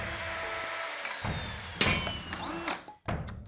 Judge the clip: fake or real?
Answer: real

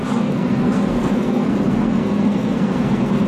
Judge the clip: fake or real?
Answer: fake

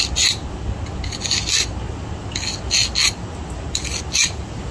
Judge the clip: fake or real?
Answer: real